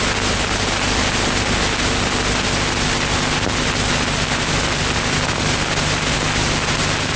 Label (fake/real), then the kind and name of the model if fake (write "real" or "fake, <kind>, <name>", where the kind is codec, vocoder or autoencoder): real